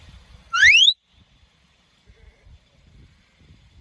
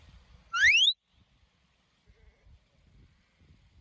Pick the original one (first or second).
second